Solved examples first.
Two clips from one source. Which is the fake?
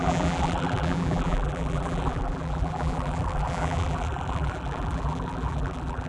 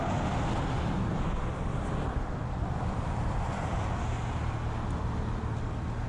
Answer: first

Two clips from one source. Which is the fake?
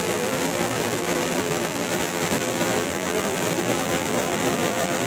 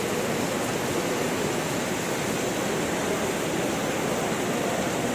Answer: first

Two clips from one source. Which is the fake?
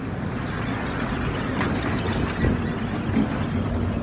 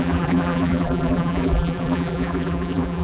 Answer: second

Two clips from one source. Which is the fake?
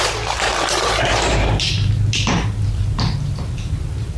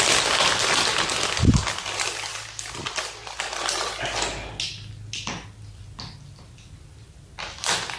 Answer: first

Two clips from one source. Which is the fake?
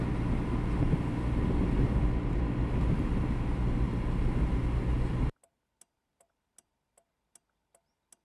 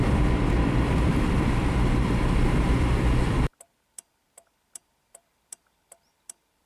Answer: second